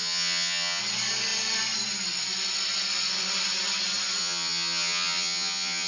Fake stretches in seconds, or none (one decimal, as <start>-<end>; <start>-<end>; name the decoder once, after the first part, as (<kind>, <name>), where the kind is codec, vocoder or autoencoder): 0.0-0.8 (vocoder, HiFi-GAN); 4.2-5.9